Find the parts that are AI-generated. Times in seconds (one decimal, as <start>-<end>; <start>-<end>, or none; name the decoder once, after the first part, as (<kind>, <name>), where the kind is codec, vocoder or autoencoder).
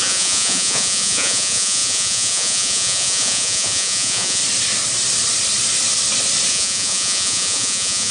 0.0-4.4 (vocoder, Vocos); 6.5-8.1